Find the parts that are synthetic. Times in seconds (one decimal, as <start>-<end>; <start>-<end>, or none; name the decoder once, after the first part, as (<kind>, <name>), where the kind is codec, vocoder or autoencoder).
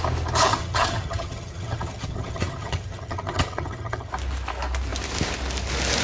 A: 0.5-4.1 (vocoder, HiFi-GAN)